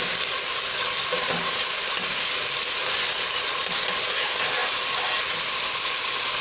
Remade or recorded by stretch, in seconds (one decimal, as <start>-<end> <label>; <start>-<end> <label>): 0.0-6.4 recorded